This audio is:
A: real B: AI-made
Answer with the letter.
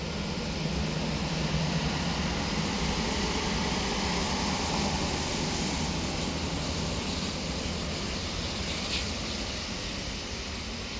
A